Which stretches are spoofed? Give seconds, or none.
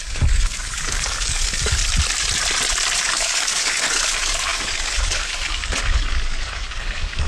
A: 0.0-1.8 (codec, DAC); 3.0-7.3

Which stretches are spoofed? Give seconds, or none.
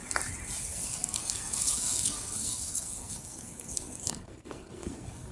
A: 0.6-5.3 (codec, SNAC)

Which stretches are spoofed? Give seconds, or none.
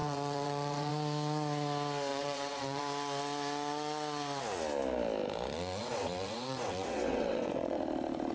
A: 0.0-0.9 (vocoder, WaveNeXt); 2.1-2.8; 5.8-7.8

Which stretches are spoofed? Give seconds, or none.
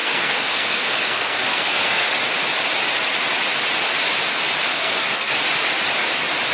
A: 0.0-2.1 (codec, SNAC); 4.7-5.3